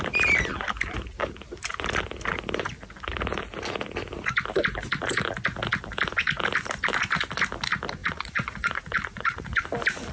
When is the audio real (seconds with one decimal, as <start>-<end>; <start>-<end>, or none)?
0.0-8.0; 9.6-10.1